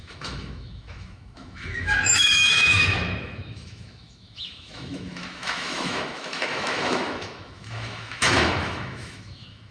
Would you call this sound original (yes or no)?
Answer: no